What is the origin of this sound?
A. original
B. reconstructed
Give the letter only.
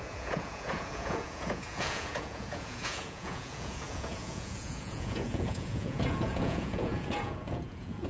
B